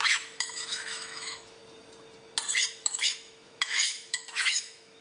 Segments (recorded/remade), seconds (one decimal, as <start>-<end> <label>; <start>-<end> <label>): 0.0-1.6 remade; 1.6-2.8 recorded; 2.8-5.0 remade